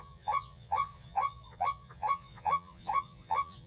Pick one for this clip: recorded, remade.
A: remade